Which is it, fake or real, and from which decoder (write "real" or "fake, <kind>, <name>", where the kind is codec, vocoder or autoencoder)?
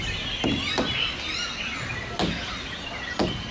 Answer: real